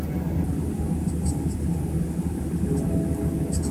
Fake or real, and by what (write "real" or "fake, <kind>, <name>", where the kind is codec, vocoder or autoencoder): real